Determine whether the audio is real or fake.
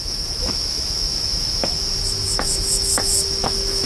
fake